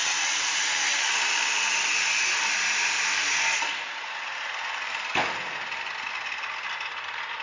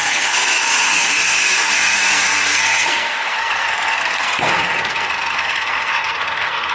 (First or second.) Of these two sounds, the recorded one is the first